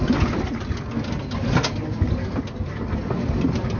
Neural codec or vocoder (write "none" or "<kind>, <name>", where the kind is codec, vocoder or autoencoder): none